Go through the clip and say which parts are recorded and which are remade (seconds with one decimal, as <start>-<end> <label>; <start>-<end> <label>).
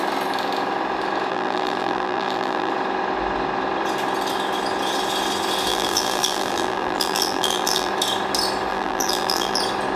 0.0-1.3 recorded; 1.3-2.7 remade; 2.7-5.7 recorded; 5.7-7.9 remade; 7.9-8.7 recorded; 8.7-9.6 remade; 9.6-10.0 recorded